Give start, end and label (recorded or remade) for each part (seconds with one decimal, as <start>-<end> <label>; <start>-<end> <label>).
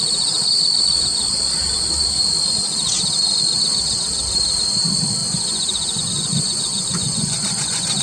0.0-5.2 recorded; 5.2-8.0 remade